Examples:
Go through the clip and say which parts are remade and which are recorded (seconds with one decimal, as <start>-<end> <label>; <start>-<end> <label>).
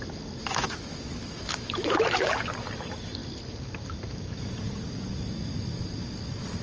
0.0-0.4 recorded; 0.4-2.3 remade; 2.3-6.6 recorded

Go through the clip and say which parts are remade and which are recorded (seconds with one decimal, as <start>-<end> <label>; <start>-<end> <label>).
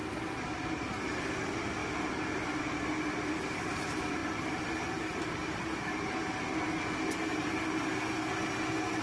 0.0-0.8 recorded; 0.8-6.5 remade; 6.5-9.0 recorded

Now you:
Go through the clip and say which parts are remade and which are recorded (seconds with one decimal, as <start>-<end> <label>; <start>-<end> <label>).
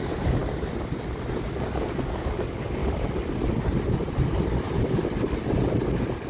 0.0-0.4 remade; 0.4-1.5 recorded; 1.5-2.8 remade; 2.8-6.3 recorded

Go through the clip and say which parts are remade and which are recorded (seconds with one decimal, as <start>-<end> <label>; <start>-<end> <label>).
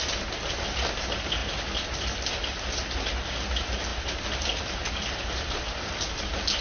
0.0-6.6 recorded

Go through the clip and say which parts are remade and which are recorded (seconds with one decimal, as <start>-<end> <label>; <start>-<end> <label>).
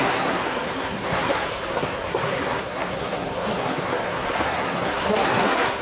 0.0-5.8 remade